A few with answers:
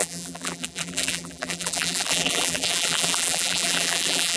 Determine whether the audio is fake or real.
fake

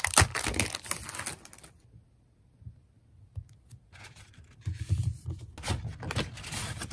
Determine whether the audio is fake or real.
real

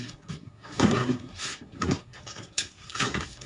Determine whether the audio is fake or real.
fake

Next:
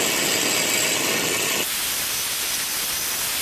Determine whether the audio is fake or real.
real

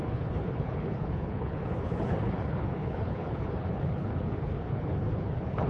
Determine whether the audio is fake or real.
fake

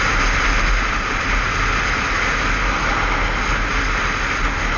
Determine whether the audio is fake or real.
real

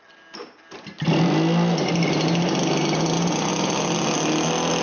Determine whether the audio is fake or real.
real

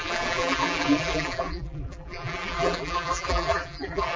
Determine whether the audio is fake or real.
fake